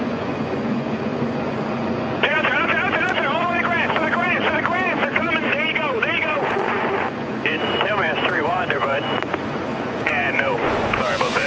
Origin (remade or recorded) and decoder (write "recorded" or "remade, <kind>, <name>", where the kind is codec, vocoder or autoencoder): remade, vocoder, Vocos